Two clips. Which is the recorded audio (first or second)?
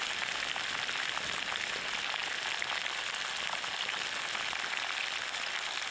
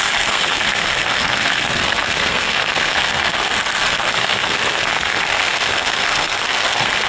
first